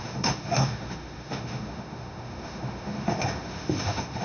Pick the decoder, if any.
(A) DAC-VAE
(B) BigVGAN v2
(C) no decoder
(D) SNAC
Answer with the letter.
A